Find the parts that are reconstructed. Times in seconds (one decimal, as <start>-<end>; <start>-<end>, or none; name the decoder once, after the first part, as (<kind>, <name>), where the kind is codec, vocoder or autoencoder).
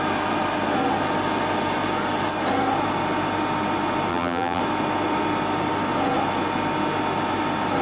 4.1-4.6 (vocoder, BigVGAN v2)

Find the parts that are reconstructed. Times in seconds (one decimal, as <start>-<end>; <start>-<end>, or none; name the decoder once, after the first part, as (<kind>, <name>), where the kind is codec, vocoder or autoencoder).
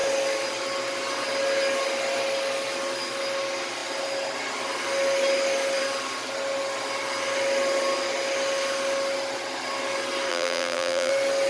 10.3-11.1 (vocoder, BigVGAN v2)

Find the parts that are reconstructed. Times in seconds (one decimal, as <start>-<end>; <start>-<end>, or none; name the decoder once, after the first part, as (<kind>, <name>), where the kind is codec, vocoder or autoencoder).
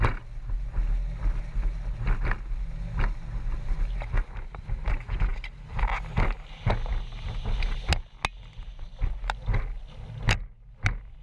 none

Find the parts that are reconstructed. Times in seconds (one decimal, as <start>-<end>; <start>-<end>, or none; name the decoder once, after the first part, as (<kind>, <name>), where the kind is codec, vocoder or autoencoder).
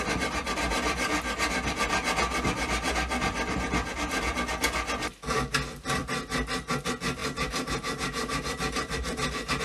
7.2-9.6 (vocoder, BigVGAN v2)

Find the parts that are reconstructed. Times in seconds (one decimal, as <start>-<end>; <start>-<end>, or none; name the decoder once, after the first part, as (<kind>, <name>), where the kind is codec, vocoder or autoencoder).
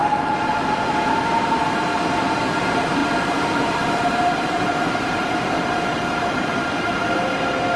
1.3-1.9 (vocoder, BigVGAN v2); 2.6-7.8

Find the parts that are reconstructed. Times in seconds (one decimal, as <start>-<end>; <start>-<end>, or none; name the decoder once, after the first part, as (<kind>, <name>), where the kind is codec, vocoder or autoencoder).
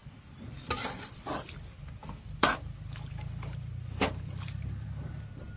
0.0-1.4 (vocoder, BigVGAN v2); 2.0-5.6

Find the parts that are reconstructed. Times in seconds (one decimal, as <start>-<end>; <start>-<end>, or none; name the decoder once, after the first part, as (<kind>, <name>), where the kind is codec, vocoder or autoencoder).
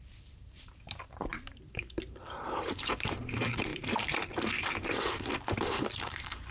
0.0-6.5 (vocoder, BigVGAN v2)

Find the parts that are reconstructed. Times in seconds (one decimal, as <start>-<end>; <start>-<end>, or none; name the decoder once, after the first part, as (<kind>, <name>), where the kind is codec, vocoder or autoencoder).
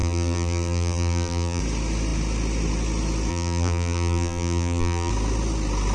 0.0-1.6 (vocoder, BigVGAN v2); 3.3-5.1